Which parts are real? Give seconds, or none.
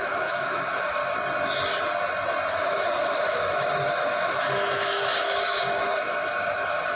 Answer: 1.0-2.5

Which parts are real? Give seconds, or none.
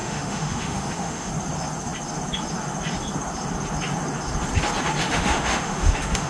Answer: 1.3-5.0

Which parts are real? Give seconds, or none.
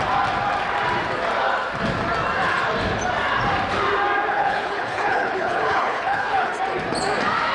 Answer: 0.0-4.3; 6.5-7.5